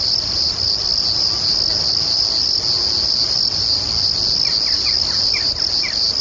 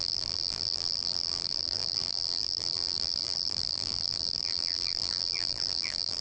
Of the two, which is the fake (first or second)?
second